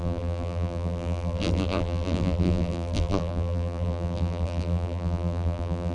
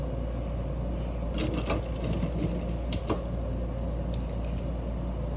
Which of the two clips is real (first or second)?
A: second